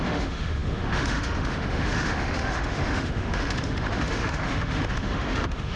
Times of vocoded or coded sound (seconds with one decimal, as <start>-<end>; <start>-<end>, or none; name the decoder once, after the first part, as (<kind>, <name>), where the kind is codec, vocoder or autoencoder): 0.0-5.8 (autoencoder, DAC-VAE)